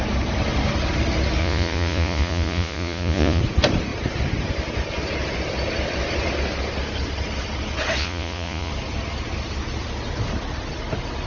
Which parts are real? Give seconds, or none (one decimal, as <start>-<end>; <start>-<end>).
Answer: 0.0-1.4; 3.4-8.0; 8.7-11.3